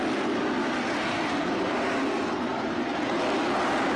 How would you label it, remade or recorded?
recorded